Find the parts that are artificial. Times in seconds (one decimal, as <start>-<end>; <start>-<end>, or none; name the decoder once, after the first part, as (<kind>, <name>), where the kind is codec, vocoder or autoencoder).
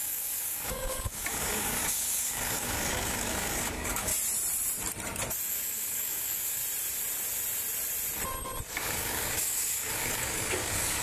0.0-4.1 (codec, DAC); 5.5-6.6; 8.7-11.0